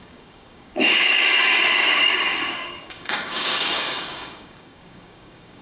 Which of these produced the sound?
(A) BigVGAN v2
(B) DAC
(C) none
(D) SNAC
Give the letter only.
B